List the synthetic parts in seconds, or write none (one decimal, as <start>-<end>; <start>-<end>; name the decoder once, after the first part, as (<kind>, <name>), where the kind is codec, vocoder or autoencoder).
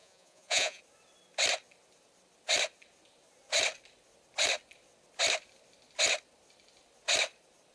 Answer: 0.0-0.8 (vocoder, Vocos)